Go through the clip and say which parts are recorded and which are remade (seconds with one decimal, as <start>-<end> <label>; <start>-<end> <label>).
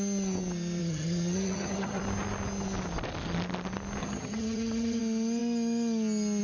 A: 0.0-0.8 recorded; 0.8-2.0 remade; 2.0-4.0 recorded; 4.0-5.0 remade; 5.0-6.4 recorded